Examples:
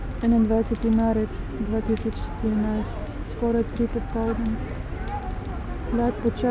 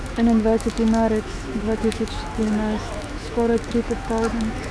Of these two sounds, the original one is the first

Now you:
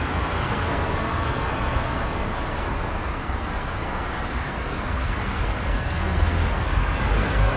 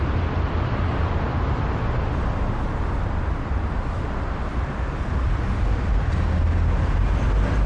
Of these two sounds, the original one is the second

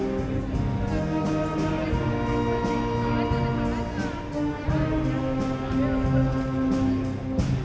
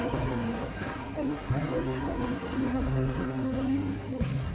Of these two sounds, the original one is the first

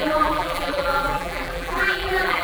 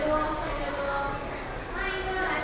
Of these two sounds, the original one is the second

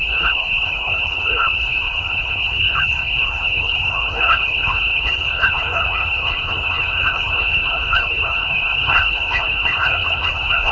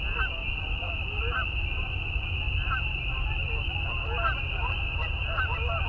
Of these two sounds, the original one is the second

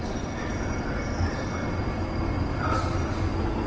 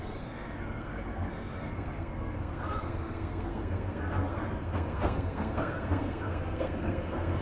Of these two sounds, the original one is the first